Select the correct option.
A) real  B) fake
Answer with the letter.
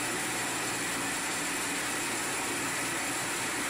A